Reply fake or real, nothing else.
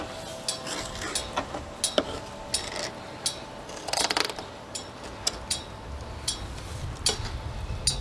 real